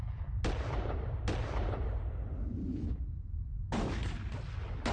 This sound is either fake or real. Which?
real